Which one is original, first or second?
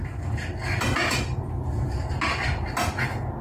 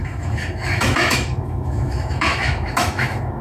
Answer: first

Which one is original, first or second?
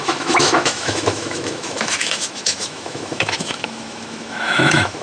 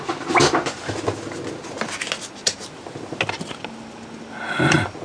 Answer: second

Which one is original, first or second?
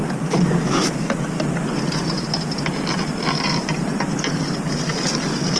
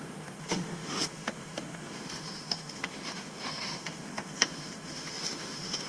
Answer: first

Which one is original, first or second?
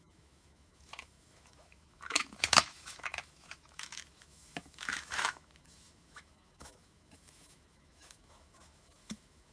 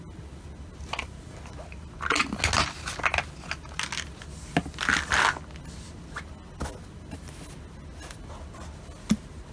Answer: second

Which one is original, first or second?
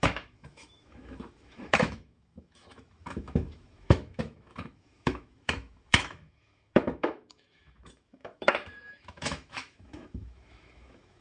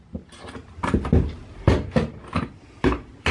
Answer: second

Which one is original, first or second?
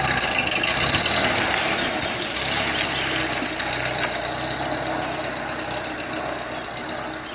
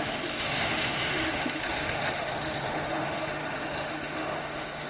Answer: first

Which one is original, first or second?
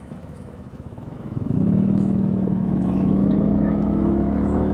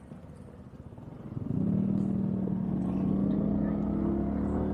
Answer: second